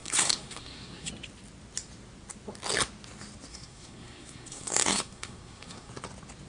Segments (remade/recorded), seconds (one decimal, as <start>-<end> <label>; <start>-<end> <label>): 0.0-1.1 remade; 1.1-3.5 recorded; 3.5-5.9 remade; 5.9-6.5 recorded